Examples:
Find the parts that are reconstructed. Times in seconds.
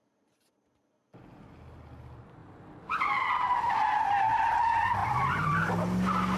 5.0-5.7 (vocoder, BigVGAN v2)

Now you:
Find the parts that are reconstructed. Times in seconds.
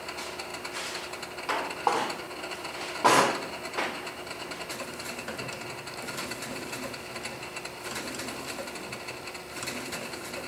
none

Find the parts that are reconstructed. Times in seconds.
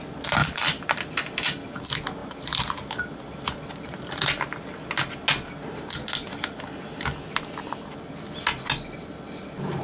0.4-1.0 (vocoder, BigVGAN v2); 2.2-2.8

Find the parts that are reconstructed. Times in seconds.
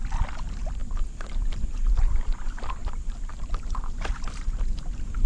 0.0-5.3 (vocoder, BigVGAN v2)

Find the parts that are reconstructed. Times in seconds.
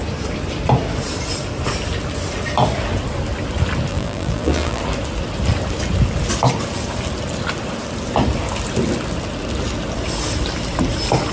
3.9-4.8 (vocoder, BigVGAN v2)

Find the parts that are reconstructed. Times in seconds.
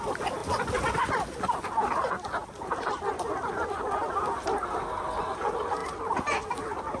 none